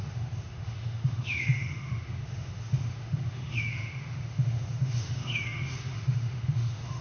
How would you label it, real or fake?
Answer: fake